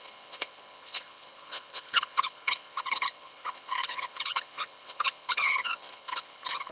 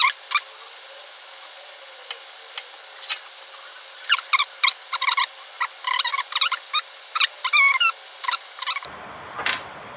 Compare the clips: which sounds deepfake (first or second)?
first